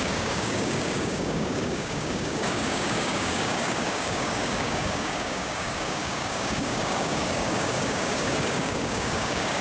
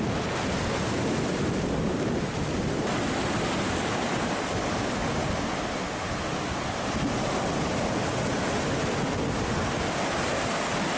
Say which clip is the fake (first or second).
first